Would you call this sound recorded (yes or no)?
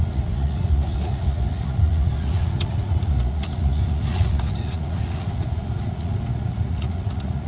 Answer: no